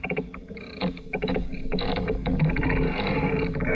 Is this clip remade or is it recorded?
remade